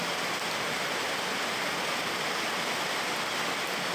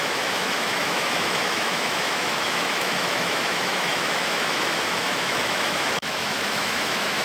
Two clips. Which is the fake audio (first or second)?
second